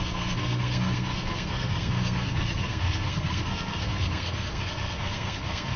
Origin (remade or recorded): remade